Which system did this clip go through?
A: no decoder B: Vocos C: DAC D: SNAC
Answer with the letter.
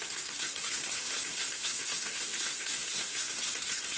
D